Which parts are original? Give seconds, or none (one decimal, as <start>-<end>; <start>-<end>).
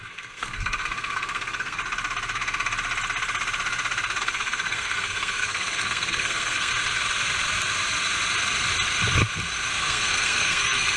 1.8-4.2; 6.7-9.7